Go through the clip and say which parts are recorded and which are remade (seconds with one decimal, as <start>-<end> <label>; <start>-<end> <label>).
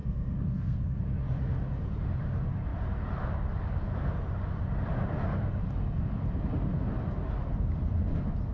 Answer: 0.0-1.0 remade; 1.0-8.5 recorded